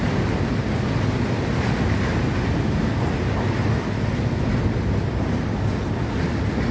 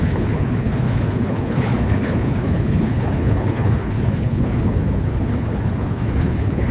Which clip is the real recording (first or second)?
first